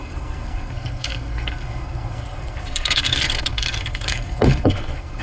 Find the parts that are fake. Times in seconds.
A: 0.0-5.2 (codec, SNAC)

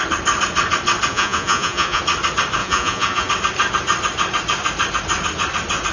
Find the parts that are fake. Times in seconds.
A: 1.1-2.0 (vocoder, Vocos); 2.6-3.3

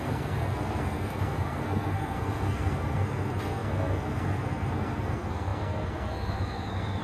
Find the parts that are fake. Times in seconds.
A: 0.0-7.0 (codec, SNAC)

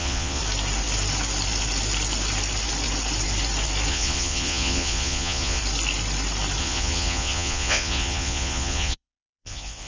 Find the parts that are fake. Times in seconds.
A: 0.0-0.4 (vocoder, Vocos); 3.9-5.6; 6.6-9.9

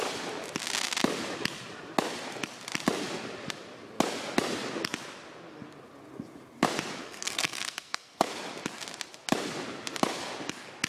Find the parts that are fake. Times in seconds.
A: 7.0-8.3 (codec, SNAC)